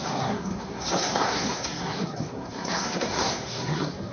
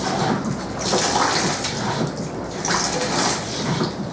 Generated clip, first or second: first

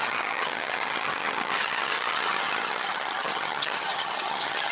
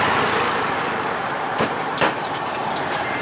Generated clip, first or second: first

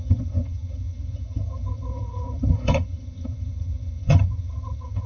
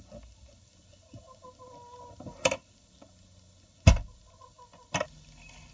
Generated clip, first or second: first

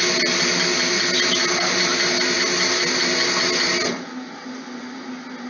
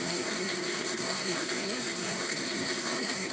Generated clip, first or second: second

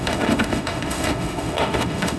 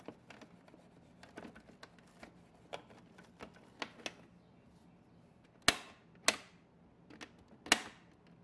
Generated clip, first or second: first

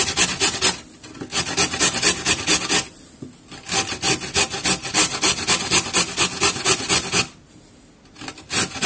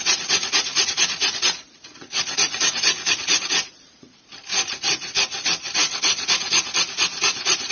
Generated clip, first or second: second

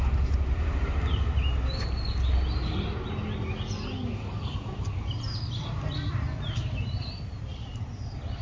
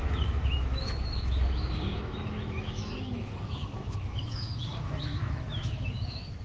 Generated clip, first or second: second